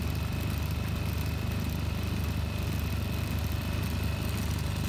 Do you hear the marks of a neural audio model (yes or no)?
no